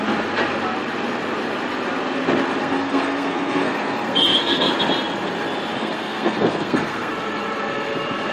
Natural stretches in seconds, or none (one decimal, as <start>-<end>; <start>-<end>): 0.0-2.6; 4.7-5.8; 7.1-8.3